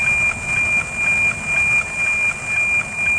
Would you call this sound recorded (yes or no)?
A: yes